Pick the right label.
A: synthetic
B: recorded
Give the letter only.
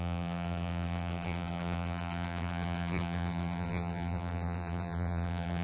A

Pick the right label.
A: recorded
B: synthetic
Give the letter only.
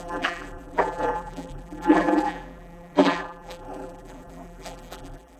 B